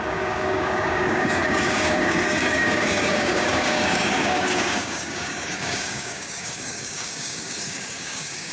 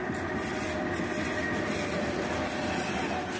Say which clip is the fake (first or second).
first